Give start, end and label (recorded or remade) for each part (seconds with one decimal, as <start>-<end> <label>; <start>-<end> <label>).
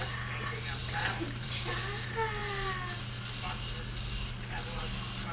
0.0-0.8 recorded; 0.8-1.8 remade; 1.8-2.4 recorded; 2.4-3.0 remade; 3.0-5.3 recorded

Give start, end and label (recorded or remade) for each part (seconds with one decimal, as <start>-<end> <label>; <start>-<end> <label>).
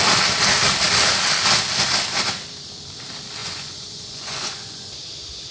0.0-3.4 recorded; 3.4-4.9 remade; 4.9-5.5 recorded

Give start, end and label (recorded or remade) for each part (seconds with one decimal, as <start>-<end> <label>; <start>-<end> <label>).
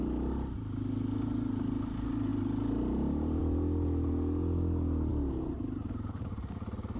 0.0-7.0 recorded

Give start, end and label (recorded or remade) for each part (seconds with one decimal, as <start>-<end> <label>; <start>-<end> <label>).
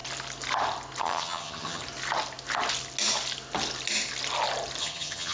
0.0-1.0 recorded; 1.0-1.8 remade; 1.8-4.8 recorded; 4.8-5.3 remade